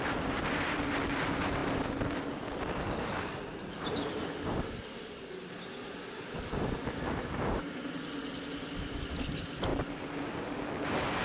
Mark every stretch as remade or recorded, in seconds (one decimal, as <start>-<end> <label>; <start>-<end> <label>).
0.0-11.2 recorded